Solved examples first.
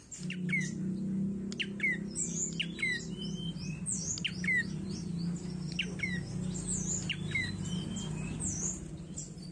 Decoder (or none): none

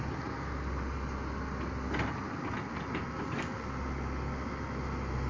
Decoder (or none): none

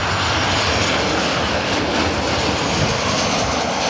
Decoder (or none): none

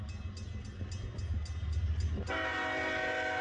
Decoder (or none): none